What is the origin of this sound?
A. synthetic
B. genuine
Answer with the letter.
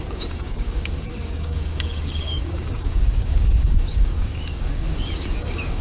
A